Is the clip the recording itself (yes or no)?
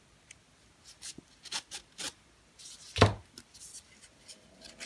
yes